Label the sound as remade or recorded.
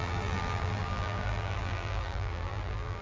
remade